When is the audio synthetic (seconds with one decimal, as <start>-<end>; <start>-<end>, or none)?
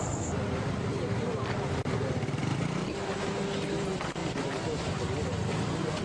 none